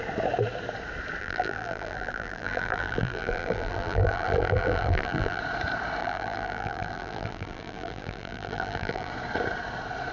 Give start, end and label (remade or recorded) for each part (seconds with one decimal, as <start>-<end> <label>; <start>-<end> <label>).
0.0-1.2 recorded; 1.2-5.4 remade; 5.4-6.0 recorded; 6.0-9.1 remade; 9.1-10.1 recorded